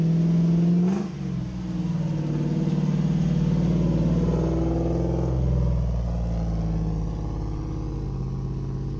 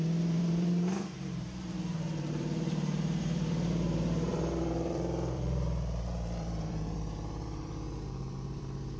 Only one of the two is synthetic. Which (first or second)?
second